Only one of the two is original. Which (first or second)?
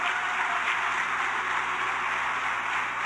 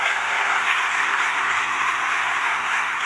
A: first